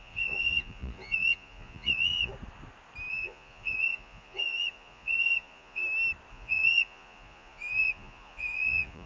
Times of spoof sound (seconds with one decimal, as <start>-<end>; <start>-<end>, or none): 0.0-2.3; 3.1-5.8; 6.3-9.1